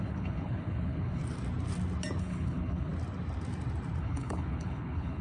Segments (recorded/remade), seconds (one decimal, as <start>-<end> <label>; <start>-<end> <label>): 0.0-1.2 remade; 1.2-2.2 recorded; 2.2-2.9 remade; 2.9-4.0 recorded; 4.0-5.2 remade